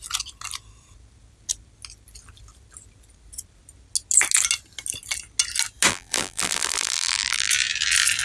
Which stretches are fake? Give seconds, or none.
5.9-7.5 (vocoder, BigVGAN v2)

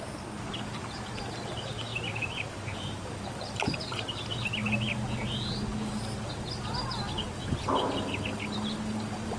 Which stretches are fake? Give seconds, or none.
1.9-3.1 (vocoder, BigVGAN v2)

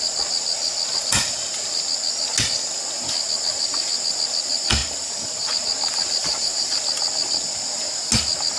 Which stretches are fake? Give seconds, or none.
4.8-5.5 (vocoder, BigVGAN v2); 6.2-6.8

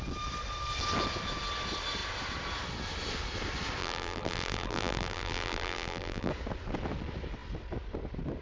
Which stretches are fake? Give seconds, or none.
3.8-6.3 (vocoder, BigVGAN v2)

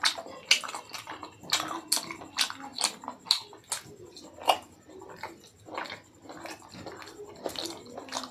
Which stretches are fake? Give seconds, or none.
none

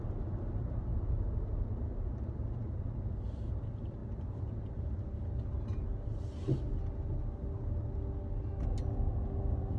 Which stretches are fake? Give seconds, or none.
none